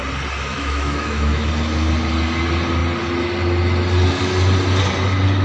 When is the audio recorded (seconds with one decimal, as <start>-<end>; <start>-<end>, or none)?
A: 0.0-0.5; 1.5-5.4